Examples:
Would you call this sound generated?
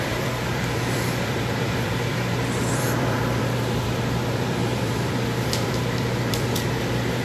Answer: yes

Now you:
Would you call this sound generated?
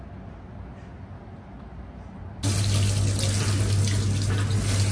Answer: no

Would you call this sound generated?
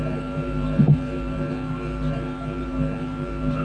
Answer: yes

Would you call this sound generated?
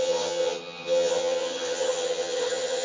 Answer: yes